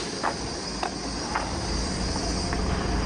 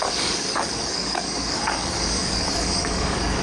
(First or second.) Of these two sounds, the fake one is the second